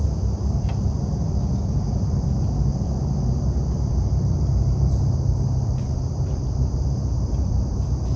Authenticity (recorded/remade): remade